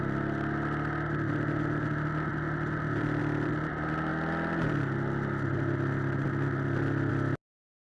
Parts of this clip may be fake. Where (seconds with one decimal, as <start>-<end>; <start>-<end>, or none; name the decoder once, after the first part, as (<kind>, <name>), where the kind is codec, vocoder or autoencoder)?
none

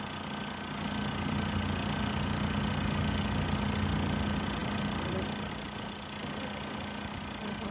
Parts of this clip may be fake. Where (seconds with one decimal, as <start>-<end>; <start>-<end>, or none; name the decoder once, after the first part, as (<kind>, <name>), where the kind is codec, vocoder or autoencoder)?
4.6-5.5 (vocoder, BigVGAN v2)

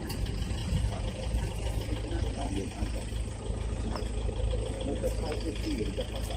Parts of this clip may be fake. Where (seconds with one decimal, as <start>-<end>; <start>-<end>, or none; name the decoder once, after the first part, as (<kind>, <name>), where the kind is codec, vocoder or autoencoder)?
0.6-1.4 (vocoder, Vocos)

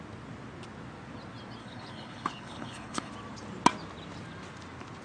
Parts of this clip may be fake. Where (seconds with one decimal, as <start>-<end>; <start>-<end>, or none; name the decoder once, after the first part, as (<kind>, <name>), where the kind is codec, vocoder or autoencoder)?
1.6-3.1 (codec, HILCodec)

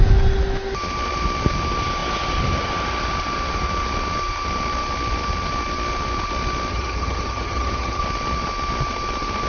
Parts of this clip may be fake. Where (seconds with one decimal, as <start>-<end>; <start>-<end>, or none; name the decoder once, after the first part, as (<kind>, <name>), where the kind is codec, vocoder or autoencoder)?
6.7-8.0 (vocoder, HiFi-GAN)